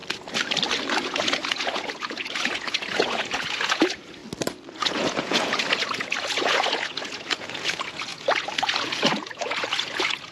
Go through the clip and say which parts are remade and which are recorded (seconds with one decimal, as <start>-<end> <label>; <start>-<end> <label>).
0.0-1.0 recorded; 1.0-4.2 remade; 4.2-4.7 recorded; 4.7-10.3 remade